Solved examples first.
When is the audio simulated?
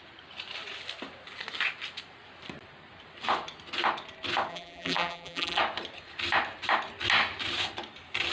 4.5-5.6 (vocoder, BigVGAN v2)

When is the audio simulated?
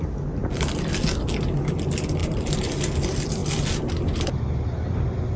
2.2-2.7 (vocoder, BigVGAN v2)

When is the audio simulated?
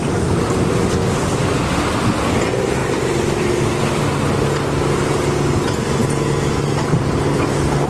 0.0-0.8 (vocoder, BigVGAN v2); 2.8-4.0